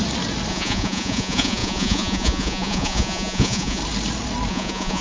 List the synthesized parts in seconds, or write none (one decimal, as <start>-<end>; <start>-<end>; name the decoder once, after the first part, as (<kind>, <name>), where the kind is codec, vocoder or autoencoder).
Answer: 0.5-3.8 (vocoder, Vocos); 4.5-5.0